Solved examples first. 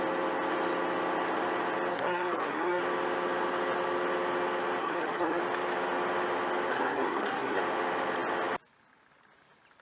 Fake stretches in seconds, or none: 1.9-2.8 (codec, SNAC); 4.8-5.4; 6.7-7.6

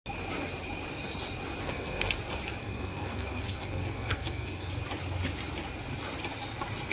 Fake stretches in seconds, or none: 1.6-2.1 (codec, SNAC); 2.6-4.7

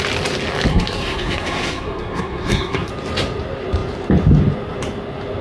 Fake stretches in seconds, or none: 0.7-2.9 (codec, SNAC)

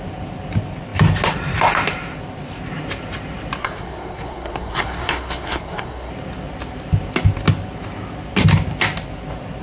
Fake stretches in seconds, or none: 3.6-6.1 (codec, SNAC)

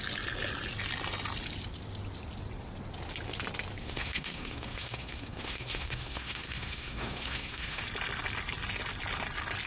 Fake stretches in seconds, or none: 3.8-7.8 (codec, SNAC)

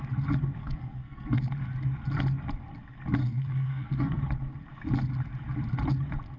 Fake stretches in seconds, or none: 0.6-1.4 (codec, SNAC); 3.2-4.2

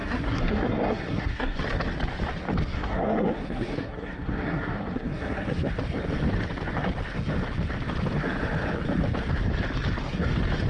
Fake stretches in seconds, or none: 0.0-1.6 (codec, SNAC); 2.7-5.7

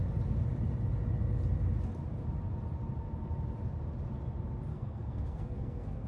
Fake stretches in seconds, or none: 4.7-6.1 (codec, SNAC)